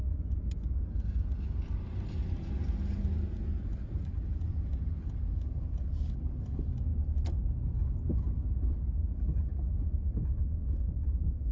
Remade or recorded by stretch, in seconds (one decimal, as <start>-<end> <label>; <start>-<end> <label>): 0.0-11.5 recorded